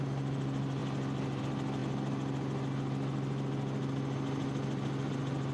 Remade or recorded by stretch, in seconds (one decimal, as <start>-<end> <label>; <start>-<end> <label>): 0.0-5.5 recorded